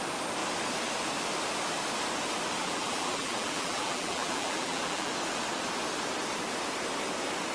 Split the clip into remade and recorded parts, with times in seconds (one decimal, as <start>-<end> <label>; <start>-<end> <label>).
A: 0.0-2.6 recorded; 2.6-5.1 remade; 5.1-7.5 recorded